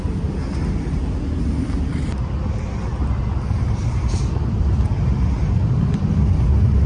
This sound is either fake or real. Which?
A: real